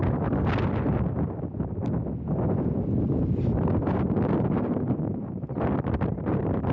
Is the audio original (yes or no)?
yes